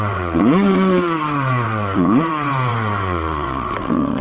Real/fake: fake